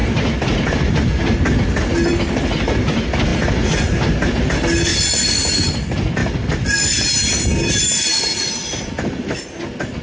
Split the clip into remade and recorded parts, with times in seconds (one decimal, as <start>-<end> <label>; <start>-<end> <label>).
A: 0.0-10.0 recorded